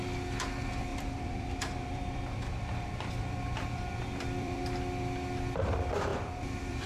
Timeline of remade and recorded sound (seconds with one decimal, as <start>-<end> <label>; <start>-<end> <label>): 0.0-0.9 recorded; 0.9-4.6 remade; 4.6-6.1 recorded; 6.1-6.9 remade